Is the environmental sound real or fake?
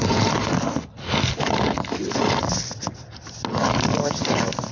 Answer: real